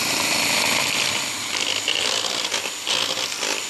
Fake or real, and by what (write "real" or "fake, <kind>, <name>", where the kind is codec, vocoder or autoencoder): real